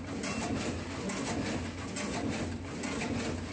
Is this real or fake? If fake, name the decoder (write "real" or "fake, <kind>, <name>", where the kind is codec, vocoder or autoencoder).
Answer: real